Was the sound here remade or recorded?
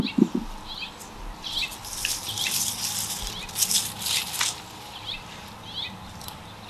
recorded